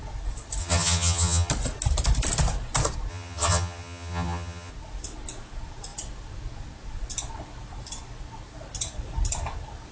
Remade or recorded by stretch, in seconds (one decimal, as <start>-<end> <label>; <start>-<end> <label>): 0.0-0.6 recorded; 0.6-1.5 remade; 1.5-3.1 recorded; 3.1-4.7 remade; 4.7-9.9 recorded